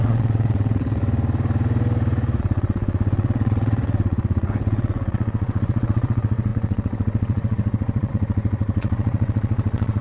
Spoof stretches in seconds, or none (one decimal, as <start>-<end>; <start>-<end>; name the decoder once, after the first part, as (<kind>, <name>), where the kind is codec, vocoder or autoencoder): 0.0-1.0 (vocoder, WaveNeXt); 2.4-10.0